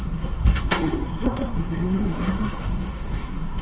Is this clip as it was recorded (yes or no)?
no